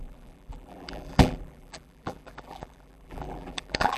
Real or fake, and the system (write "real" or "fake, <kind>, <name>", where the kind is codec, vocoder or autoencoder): fake, vocoder, BigVGAN v2